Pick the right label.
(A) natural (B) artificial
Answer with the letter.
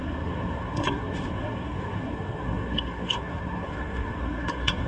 B